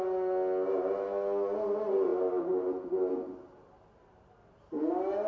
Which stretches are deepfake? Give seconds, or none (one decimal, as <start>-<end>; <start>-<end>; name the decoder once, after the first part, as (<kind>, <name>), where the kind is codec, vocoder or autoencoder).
none

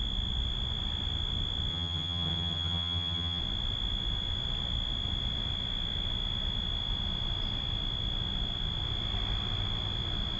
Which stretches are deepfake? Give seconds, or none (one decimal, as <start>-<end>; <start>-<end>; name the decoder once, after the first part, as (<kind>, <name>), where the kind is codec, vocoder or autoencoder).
1.7-3.4 (vocoder, HiFi-GAN)

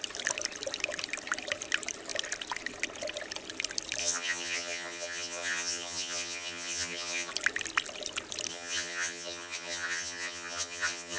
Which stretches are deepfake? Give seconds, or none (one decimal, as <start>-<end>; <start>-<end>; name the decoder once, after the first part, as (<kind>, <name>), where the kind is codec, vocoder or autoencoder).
4.0-7.3 (vocoder, HiFi-GAN); 8.5-11.2

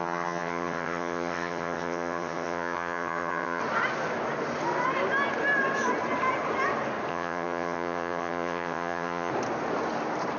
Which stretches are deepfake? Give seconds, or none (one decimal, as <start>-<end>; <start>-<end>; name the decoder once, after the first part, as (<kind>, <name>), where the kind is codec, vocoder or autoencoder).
0.0-3.6 (vocoder, HiFi-GAN); 7.1-9.3